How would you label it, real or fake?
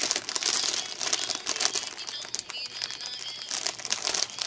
real